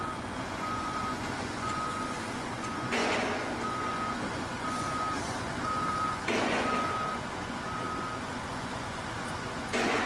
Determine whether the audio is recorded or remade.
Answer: remade